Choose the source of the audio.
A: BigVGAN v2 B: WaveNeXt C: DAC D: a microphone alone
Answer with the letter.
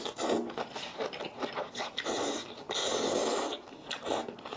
D